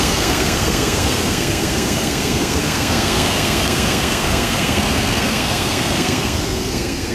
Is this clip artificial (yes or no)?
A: yes